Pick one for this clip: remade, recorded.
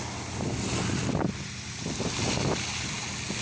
recorded